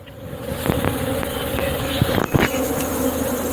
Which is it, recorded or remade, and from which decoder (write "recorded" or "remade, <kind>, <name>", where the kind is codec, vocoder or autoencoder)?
recorded